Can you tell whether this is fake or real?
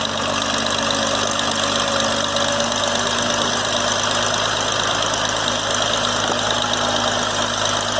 real